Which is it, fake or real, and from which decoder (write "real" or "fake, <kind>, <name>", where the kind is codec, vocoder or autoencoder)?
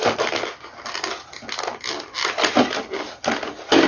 real